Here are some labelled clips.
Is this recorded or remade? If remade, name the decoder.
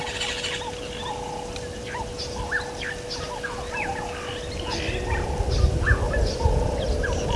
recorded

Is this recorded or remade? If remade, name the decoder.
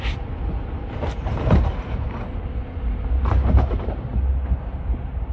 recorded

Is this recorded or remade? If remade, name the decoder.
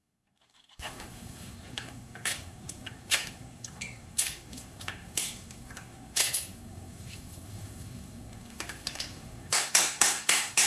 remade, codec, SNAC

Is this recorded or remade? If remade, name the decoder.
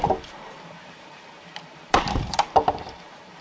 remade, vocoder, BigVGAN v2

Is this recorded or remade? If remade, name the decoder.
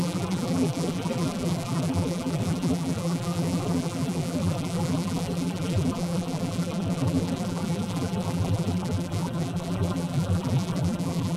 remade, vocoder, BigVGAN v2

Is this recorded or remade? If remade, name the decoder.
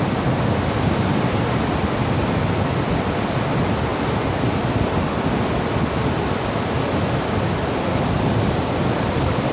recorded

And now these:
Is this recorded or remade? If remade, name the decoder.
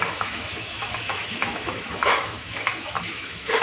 remade, autoencoder, DAC-VAE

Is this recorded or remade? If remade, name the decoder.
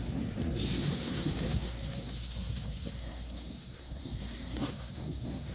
remade, codec, SNAC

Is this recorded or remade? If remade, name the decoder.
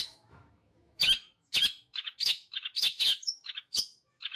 remade, autoencoder, DAC-VAE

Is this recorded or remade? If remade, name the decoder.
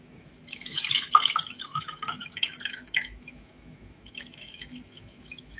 remade, autoencoder, DAC-VAE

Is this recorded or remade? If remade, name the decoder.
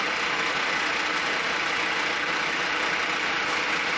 recorded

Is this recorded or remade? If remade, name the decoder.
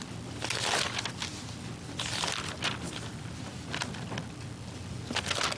recorded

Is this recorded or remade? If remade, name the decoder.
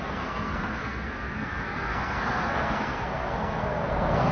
remade, codec, SNAC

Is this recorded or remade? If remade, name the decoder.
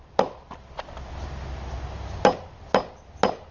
recorded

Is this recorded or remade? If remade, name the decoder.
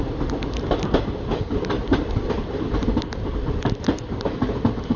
recorded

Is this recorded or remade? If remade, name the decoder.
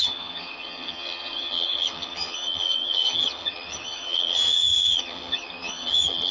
remade, vocoder, HiFi-GAN